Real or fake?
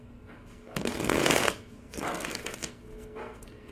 fake